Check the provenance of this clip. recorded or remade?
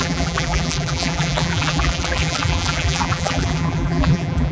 remade